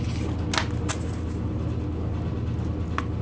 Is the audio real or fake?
real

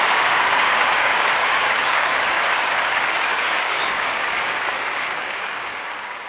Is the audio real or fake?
fake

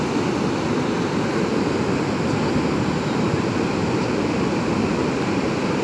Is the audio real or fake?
real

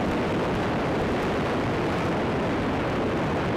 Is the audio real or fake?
real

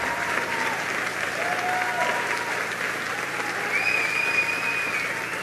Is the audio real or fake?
real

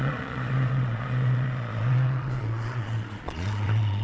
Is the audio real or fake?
fake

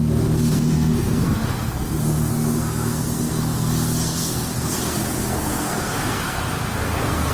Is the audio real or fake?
fake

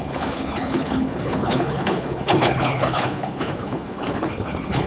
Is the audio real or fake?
fake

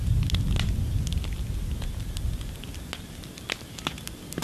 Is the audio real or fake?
real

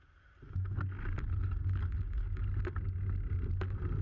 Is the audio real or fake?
real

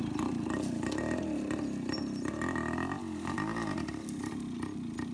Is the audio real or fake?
real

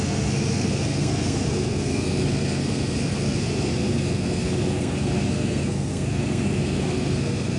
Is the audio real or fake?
fake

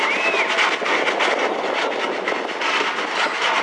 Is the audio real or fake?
real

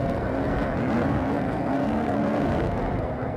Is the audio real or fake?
fake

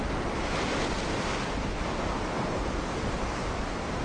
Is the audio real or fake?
real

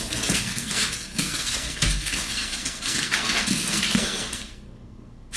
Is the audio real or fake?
fake